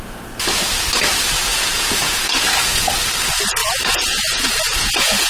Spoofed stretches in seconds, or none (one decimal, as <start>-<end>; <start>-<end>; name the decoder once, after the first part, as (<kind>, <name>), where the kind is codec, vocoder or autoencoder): 1.5-2.9 (vocoder, Vocos); 3.6-5.3